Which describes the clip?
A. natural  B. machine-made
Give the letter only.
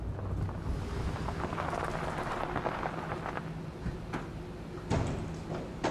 A